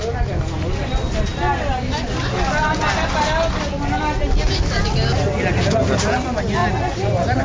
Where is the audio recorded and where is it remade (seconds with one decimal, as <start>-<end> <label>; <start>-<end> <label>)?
0.0-7.4 recorded